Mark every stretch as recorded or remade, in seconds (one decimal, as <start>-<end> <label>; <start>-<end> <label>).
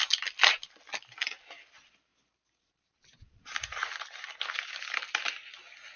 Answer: 0.0-2.1 recorded; 2.1-4.8 remade; 4.8-6.0 recorded